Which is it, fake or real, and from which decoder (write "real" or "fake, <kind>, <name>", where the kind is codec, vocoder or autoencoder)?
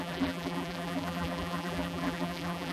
fake, vocoder, BigVGAN v2